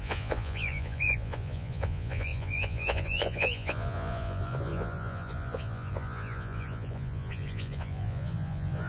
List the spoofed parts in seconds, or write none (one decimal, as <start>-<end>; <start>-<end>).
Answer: 0.0-8.9